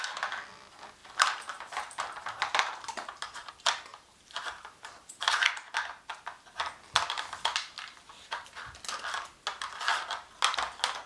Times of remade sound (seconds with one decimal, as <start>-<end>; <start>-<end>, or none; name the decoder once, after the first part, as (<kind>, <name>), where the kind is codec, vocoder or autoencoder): 1.0-3.5 (vocoder, BigVGAN v2); 3.9-5.5